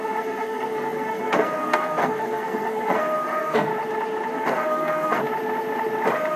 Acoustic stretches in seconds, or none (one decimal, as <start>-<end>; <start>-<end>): 3.7-4.3; 5.2-6.4